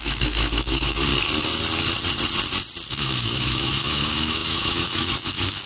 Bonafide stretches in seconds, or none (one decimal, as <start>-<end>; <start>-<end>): 1.1-2.9